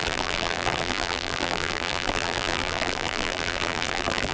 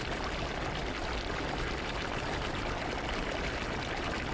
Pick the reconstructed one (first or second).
first